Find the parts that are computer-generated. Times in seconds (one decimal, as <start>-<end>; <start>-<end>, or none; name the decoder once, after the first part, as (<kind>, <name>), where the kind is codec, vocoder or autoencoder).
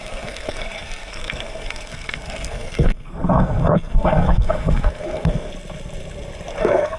0.0-5.5 (codec, SNAC); 6.6-7.0